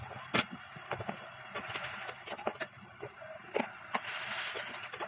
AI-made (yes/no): no